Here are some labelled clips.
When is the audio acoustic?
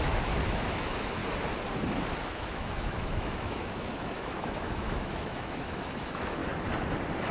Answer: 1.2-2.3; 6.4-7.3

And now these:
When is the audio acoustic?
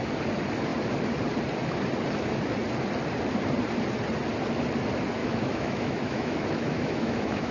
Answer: 0.0-5.2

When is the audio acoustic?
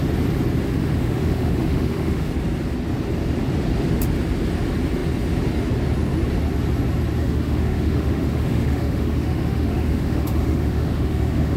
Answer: 0.0-0.6; 2.3-7.2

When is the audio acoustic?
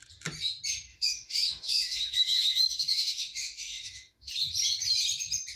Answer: 0.0-0.9; 4.3-5.6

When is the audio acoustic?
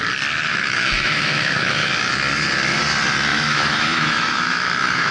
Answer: 0.0-0.5; 1.9-3.3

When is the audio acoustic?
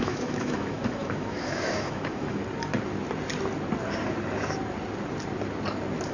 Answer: 2.4-6.1